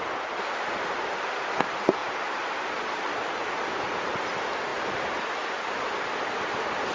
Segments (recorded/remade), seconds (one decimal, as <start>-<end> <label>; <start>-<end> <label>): 0.0-4.7 recorded; 4.7-6.0 remade; 6.0-6.9 recorded